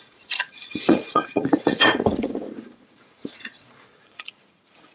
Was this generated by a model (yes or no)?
yes